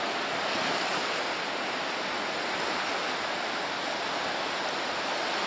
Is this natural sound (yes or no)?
yes